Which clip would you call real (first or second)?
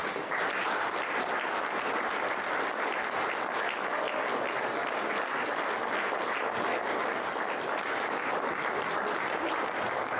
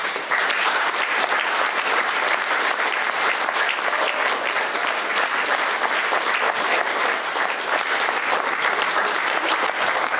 first